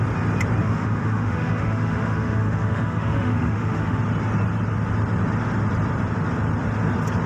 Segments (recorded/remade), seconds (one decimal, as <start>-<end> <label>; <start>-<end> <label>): 0.0-0.6 recorded; 0.6-4.0 remade; 4.0-7.3 recorded